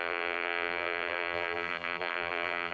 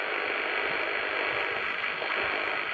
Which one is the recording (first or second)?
second